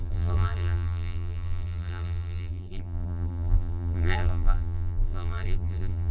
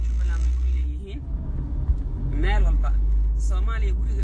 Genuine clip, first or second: second